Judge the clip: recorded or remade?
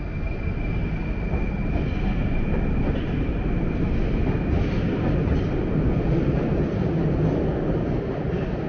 recorded